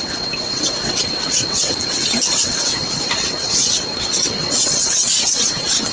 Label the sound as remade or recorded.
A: remade